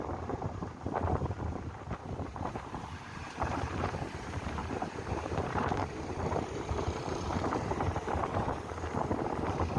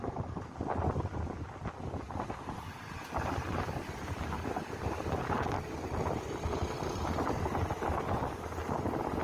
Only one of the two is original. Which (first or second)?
second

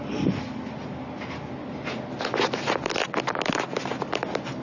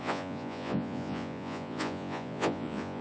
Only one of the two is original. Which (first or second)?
first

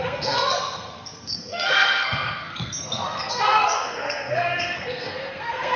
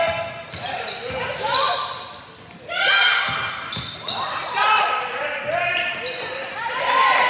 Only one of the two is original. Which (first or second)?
second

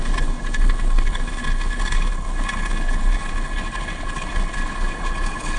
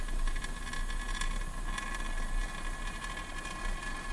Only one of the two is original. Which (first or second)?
second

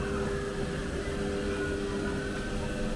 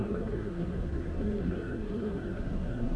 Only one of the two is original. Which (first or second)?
first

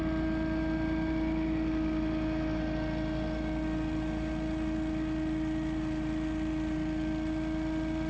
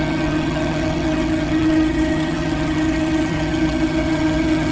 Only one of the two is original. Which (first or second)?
first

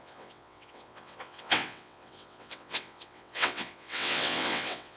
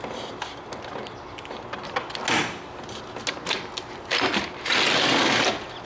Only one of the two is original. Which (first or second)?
second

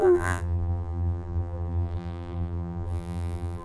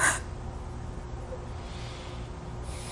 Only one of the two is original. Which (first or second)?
second